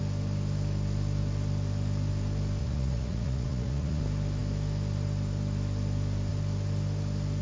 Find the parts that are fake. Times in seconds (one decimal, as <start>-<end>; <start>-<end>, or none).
2.6-4.0